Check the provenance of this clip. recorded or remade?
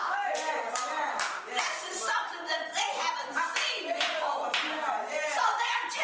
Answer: recorded